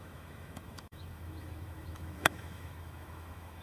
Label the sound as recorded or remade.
remade